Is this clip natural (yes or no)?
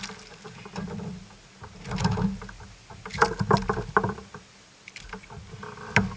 yes